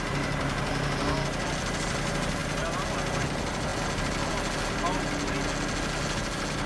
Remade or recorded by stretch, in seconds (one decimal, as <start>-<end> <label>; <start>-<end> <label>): 0.0-6.7 recorded